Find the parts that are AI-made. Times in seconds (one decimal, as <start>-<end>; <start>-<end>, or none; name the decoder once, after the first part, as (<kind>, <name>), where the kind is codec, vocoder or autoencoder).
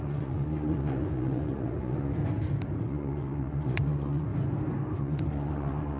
0.0-2.2 (vocoder, Vocos); 2.8-4.3; 5.0-6.0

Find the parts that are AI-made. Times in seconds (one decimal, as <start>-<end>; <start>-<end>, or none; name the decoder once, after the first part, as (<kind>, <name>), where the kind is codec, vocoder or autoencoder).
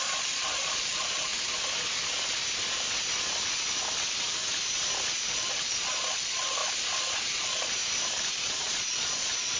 0.0-1.3 (vocoder, Vocos); 5.1-6.6; 7.1-7.8; 8.3-9.6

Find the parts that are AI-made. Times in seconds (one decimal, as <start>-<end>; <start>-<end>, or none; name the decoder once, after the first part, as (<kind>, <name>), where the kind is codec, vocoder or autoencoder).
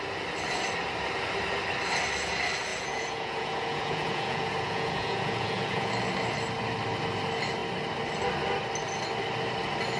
2.7-5.9 (vocoder, Vocos)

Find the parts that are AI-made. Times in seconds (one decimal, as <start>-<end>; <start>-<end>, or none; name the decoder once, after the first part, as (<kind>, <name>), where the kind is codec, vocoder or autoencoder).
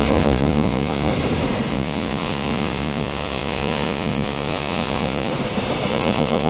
0.0-1.1 (vocoder, Vocos); 1.7-5.3; 5.9-6.5